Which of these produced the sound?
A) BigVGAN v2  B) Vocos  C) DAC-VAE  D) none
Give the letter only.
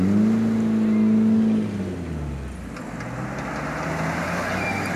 D